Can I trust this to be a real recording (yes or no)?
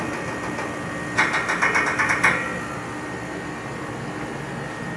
yes